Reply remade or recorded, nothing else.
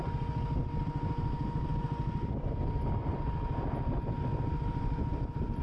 recorded